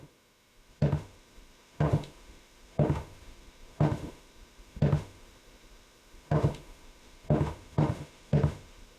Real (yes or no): no